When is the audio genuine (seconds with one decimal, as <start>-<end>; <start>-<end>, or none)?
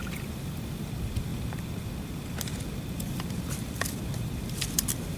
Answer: 0.9-5.2